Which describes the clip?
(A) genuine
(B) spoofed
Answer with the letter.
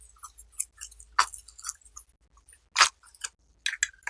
A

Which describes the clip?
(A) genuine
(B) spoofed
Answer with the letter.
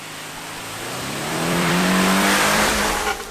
B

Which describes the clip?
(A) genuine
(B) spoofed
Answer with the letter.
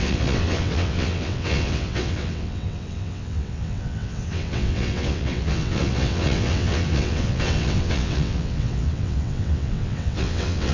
B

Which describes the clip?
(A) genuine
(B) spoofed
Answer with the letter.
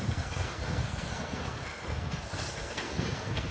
B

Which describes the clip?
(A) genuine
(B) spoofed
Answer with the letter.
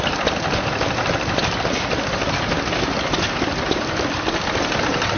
A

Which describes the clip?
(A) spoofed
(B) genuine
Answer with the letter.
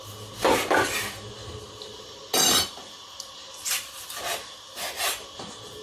B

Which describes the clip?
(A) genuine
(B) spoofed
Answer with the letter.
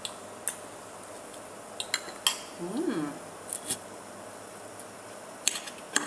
A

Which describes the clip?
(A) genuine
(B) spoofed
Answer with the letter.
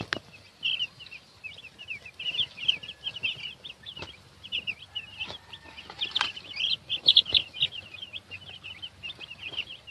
A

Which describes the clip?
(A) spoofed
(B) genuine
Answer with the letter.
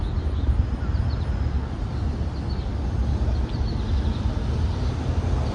B